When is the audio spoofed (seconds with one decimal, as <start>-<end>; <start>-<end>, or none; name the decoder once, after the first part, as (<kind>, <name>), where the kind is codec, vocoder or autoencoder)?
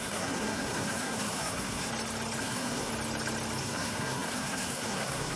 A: 0.0-1.9 (codec, SNAC); 2.4-2.9; 3.6-5.4